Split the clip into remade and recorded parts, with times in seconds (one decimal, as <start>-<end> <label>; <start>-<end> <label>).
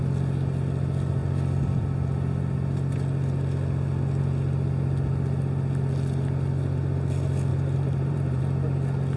0.0-7.5 recorded; 7.5-8.4 remade; 8.4-9.2 recorded